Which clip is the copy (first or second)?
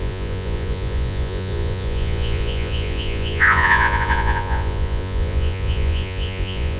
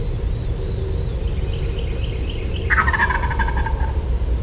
first